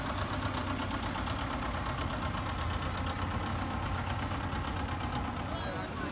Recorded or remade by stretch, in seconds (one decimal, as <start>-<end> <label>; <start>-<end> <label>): 0.0-3.5 recorded; 3.5-4.4 remade; 4.4-6.1 recorded